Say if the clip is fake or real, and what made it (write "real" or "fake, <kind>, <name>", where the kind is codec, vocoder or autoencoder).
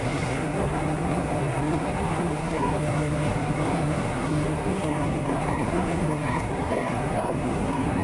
fake, codec, SNAC